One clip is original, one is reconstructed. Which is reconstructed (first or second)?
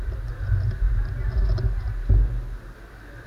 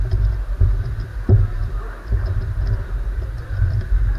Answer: second